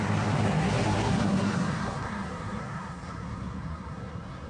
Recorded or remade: remade